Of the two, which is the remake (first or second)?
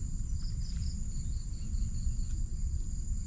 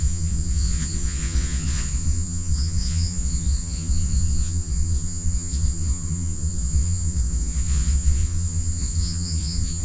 second